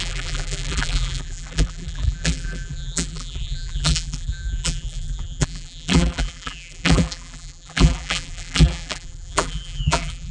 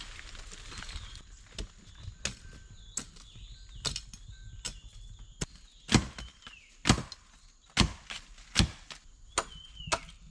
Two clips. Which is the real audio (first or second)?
second